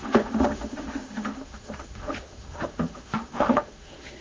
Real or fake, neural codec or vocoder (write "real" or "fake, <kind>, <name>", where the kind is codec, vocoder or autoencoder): fake, autoencoder, DAC-VAE